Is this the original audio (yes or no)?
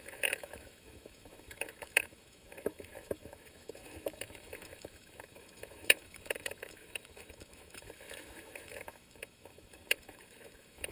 no